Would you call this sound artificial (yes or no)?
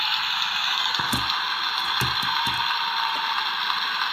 no